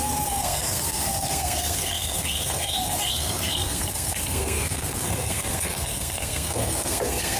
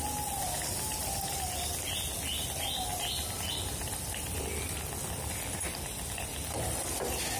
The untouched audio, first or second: second